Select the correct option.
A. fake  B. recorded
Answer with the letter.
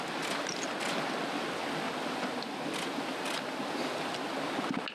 B